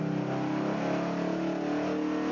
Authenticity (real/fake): real